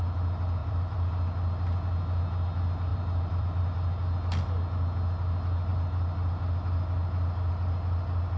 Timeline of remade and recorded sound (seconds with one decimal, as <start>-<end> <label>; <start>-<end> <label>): 0.0-0.6 recorded; 0.6-1.1 remade; 1.1-2.9 recorded; 2.9-3.6 remade; 3.6-8.4 recorded